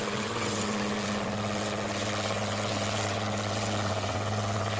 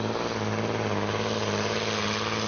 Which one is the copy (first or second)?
first